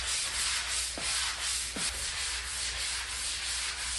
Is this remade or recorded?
recorded